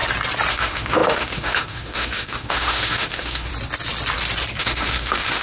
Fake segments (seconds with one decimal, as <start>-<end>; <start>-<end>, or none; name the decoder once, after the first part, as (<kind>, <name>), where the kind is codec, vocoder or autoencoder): 0.5-3.5 (autoencoder, DAC-VAE); 4.6-5.4